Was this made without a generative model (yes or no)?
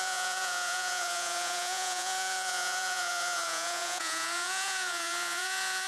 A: no